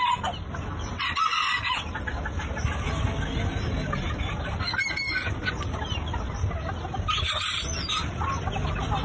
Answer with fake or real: real